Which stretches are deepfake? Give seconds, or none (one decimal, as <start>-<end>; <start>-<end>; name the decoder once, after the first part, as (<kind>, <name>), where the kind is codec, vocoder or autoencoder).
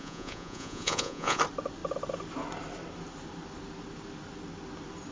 0.0-1.4 (vocoder, Vocos)